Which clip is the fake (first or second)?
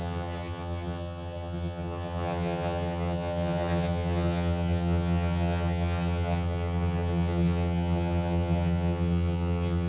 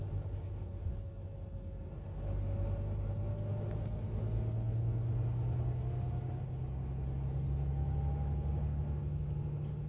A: first